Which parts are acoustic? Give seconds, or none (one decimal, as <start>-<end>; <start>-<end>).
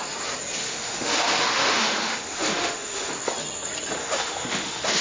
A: 0.0-0.6; 3.1-4.0